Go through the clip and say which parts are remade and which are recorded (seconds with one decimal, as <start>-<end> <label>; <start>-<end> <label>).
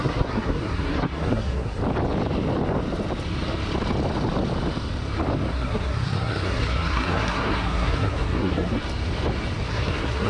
0.0-1.8 remade; 1.8-5.5 recorded; 5.5-8.8 remade; 8.8-9.7 recorded; 9.7-10.3 remade